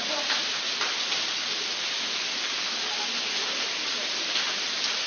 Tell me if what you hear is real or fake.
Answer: real